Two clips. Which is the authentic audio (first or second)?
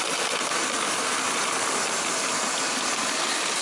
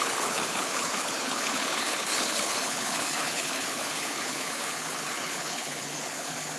first